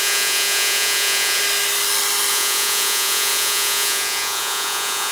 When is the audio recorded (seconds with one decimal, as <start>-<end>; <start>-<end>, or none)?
1.4-2.3

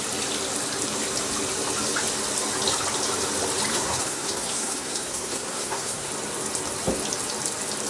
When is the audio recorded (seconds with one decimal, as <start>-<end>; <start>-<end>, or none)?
0.0-3.7; 6.1-7.9